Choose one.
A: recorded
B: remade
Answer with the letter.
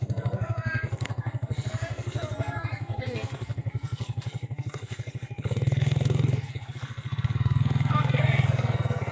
B